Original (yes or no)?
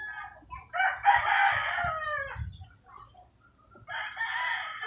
yes